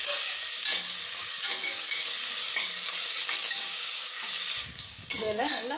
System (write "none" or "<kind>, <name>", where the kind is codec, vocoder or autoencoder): codec, DAC